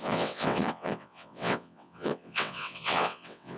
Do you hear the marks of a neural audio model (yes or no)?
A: yes